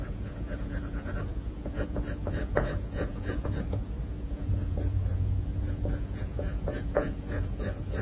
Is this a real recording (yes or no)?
no